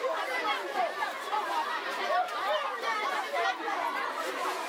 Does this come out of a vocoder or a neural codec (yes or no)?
yes